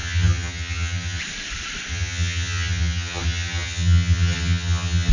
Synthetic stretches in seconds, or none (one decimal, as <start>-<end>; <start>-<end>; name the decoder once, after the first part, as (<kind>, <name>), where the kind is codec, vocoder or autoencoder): 0.0-1.2 (vocoder, HiFi-GAN); 1.9-5.1